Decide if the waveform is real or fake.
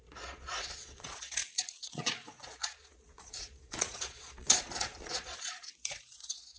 fake